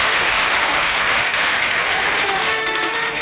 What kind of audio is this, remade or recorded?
remade